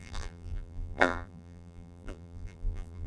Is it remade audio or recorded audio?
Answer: remade